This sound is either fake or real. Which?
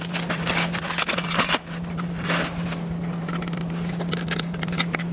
real